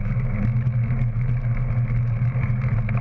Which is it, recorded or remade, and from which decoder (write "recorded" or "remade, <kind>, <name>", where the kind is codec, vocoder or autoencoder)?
recorded